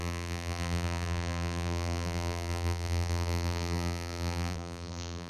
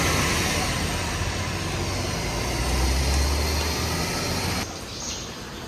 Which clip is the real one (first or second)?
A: second